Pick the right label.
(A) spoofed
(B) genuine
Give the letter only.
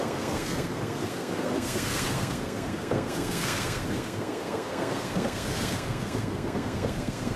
A